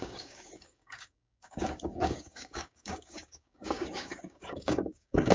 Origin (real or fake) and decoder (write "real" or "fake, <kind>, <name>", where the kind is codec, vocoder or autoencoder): fake, codec, DAC